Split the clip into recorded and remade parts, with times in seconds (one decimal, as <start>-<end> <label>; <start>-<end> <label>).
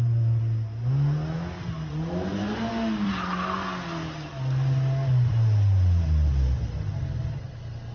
0.0-7.9 recorded